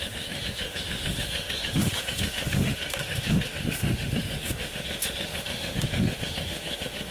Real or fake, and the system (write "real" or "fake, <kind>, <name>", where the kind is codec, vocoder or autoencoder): fake, autoencoder, DAC-VAE